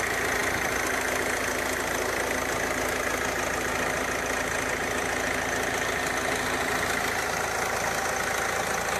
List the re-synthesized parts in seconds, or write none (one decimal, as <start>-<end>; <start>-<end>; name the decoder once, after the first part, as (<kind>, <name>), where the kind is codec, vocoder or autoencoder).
none